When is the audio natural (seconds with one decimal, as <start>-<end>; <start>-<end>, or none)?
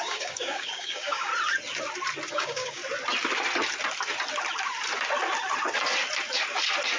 1.3-2.3; 2.8-7.0